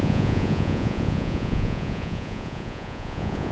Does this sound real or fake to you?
fake